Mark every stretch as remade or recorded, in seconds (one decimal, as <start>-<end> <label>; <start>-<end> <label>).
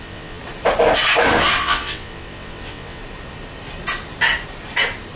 0.0-0.4 remade; 0.4-1.6 recorded; 1.6-3.0 remade; 3.0-5.2 recorded